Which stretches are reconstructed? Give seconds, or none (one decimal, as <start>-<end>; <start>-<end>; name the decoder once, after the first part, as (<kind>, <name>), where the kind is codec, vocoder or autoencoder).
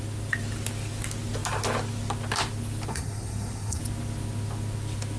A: 2.9-3.8 (codec, SNAC)